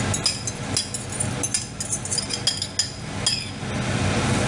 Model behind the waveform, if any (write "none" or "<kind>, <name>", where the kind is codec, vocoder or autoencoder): none